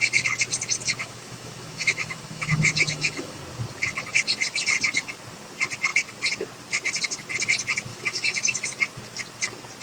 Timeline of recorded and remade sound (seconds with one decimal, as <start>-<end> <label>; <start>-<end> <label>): 0.0-1.0 recorded; 1.0-3.4 remade; 3.4-7.9 recorded; 7.9-8.7 remade; 8.7-9.8 recorded